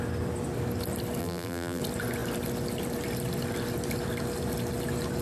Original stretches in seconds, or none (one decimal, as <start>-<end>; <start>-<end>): 0.0-1.2; 1.8-5.2